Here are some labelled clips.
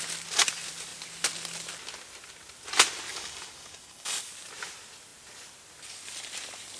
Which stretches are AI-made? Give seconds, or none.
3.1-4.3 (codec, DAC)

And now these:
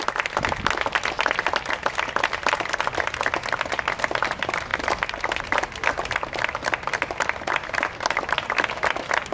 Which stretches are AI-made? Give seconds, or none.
none

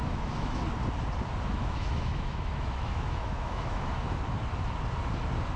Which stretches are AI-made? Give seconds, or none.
0.0-0.6 (autoencoder, DAC-VAE); 1.5-3.9

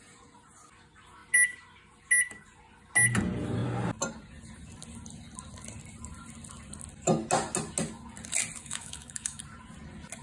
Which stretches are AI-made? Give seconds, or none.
8.6-9.4 (autoencoder, DAC-VAE)

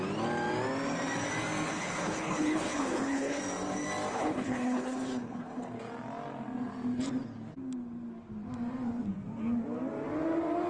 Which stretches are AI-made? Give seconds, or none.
1.7-3.4 (codec, HILCodec); 4.1-5.7

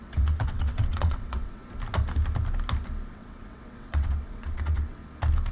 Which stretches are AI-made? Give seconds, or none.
0.0-1.6 (vocoder, WaveNeXt); 3.1-5.0